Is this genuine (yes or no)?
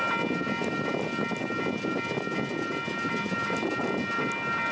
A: yes